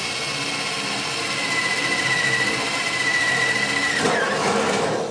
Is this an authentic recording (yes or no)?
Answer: yes